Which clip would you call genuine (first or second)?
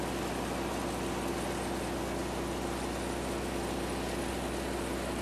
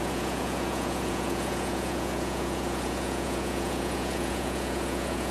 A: first